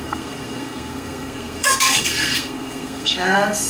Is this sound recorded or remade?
remade